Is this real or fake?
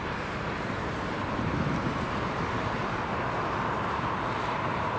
fake